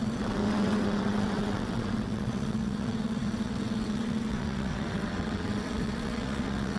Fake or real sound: fake